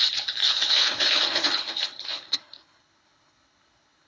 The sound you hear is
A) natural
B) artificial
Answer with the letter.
B